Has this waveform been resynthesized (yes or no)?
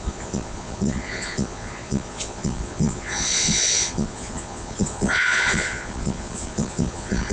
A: yes